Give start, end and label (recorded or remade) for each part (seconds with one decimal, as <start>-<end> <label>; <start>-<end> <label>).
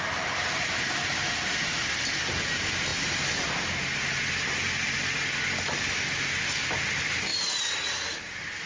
0.0-8.7 recorded